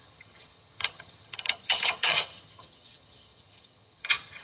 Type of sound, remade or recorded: remade